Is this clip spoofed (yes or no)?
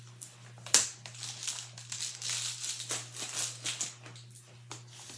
no